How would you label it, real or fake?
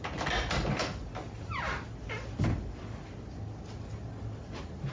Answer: real